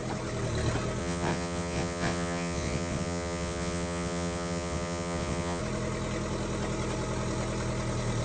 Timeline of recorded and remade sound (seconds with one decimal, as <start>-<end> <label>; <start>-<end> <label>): 0.0-1.0 recorded; 1.0-5.6 remade; 5.6-8.2 recorded